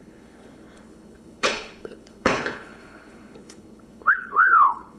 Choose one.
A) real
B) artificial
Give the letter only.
B